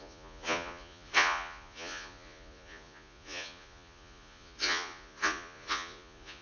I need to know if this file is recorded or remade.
remade